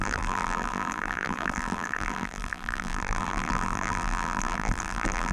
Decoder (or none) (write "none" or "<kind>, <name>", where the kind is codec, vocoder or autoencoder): vocoder, BigVGAN v2